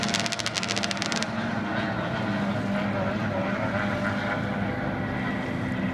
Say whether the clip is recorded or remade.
recorded